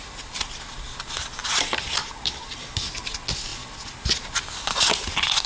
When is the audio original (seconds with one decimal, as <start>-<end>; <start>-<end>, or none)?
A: 0.0-5.5